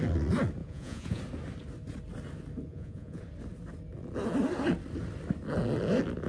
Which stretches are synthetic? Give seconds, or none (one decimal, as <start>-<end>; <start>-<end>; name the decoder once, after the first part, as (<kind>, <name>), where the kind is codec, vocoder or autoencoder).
0.6-1.2 (vocoder, Vocos); 2.7-3.2